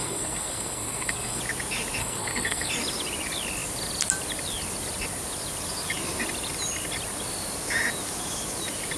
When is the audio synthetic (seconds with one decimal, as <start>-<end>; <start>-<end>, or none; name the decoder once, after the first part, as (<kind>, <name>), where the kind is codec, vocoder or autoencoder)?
0.0-1.4 (codec, SNAC); 2.0-2.7